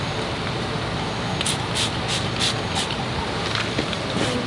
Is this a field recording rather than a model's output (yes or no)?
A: yes